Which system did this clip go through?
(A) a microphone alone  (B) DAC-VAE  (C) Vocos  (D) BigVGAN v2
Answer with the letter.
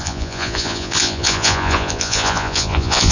C